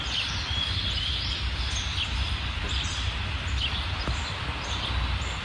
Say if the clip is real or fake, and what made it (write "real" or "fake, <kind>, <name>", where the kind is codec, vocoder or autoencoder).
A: real